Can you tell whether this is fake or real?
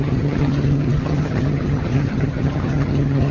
fake